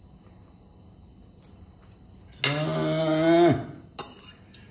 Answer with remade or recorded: recorded